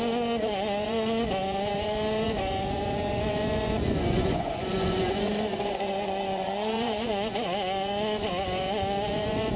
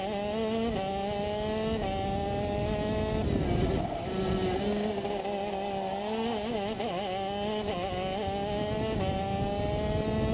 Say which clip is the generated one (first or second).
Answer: first